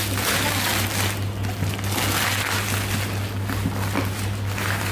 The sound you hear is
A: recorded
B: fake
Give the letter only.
A